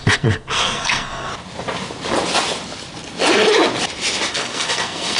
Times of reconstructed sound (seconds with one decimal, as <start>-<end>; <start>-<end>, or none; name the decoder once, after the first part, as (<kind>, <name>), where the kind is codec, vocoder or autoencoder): 0.0-1.3 (codec, SNAC); 4.3-5.2